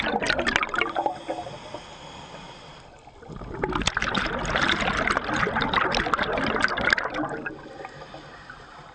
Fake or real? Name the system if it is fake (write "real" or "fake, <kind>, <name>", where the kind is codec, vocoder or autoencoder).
real